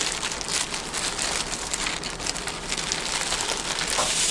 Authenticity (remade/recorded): recorded